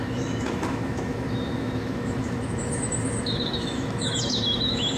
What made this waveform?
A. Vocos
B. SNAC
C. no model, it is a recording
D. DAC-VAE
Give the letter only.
D